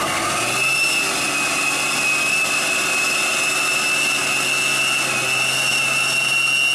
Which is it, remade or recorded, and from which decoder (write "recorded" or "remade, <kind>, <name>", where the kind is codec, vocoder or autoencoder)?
recorded